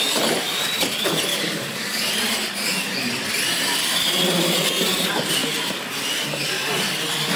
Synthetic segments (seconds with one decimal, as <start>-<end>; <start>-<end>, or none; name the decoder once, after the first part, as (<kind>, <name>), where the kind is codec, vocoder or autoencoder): 1.3-2.1 (codec, DAC)